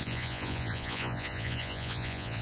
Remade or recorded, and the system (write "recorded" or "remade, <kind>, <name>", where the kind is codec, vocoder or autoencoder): remade, vocoder, Vocos